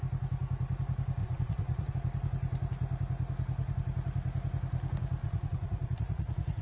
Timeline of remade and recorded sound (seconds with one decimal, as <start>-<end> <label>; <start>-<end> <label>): 0.0-1.2 recorded; 1.2-1.9 remade; 1.9-5.2 recorded; 5.2-6.6 remade